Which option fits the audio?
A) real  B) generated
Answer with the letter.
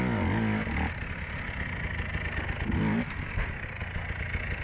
A